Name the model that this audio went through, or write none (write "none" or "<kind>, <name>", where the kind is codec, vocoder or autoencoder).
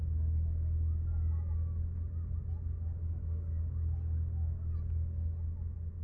none